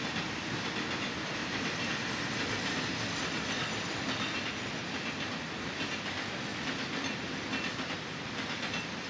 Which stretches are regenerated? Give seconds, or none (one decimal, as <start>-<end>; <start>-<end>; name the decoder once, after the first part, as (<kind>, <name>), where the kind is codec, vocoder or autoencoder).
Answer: 1.4-2.8 (vocoder, BigVGAN v2)